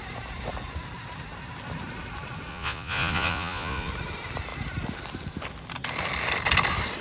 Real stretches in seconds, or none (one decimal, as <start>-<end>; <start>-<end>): 0.0-2.5; 3.9-7.0